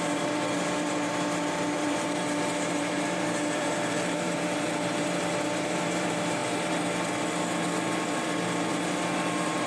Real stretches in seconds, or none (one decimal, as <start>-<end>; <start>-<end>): 6.4-8.7